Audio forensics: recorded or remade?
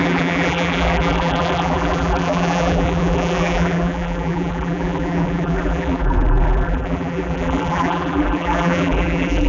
remade